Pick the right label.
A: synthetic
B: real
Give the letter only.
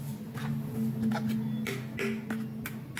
B